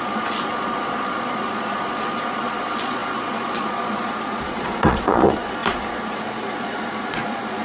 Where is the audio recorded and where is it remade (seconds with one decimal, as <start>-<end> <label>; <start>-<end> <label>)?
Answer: 0.0-7.6 remade

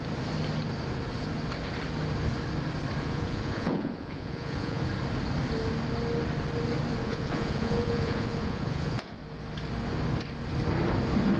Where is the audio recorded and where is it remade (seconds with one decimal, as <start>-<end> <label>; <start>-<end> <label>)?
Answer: 0.0-3.0 recorded; 3.0-4.8 remade; 4.8-7.0 recorded; 7.0-9.2 remade; 9.2-11.4 recorded